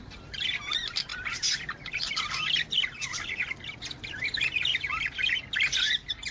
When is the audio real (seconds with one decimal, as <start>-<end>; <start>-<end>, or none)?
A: 0.0-6.3